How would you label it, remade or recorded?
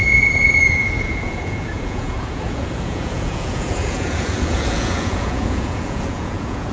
remade